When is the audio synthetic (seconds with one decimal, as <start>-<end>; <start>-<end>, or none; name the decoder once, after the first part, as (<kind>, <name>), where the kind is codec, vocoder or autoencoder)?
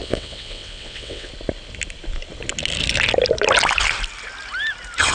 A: 0.0-1.3 (vocoder, WaveNeXt)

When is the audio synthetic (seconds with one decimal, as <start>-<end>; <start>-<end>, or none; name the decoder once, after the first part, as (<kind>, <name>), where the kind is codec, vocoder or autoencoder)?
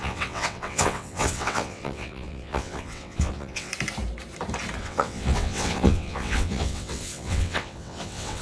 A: 0.0-3.7 (vocoder, WaveNeXt); 4.8-8.4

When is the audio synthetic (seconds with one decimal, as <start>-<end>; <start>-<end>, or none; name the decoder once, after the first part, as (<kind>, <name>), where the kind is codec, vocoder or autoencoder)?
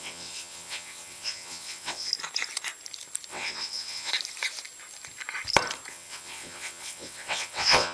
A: 0.0-2.1 (vocoder, WaveNeXt); 3.3-4.1; 5.9-7.9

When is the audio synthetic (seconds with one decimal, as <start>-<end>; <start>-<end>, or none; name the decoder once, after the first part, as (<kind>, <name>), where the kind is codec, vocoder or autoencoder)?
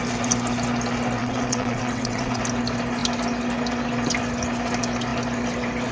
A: 1.2-2.4 (vocoder, WaveNeXt)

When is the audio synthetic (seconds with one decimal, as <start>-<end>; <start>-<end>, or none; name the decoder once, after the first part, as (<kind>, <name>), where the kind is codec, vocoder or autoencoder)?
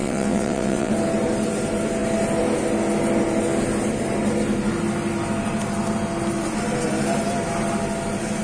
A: 0.0-0.9 (vocoder, WaveNeXt)